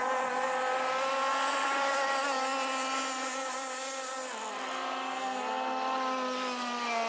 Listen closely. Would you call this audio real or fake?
real